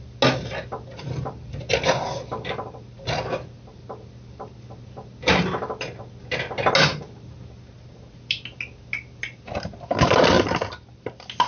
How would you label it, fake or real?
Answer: real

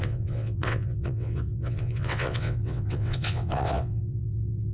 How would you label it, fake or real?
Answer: fake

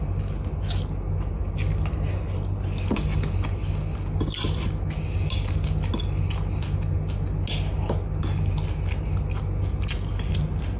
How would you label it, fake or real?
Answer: real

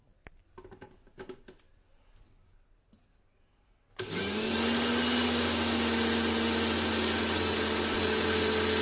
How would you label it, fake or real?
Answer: real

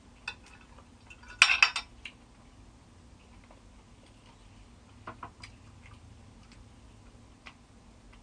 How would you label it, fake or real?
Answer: real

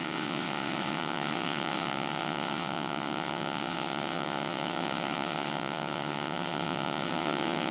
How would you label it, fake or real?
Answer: fake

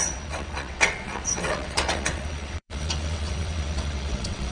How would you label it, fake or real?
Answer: fake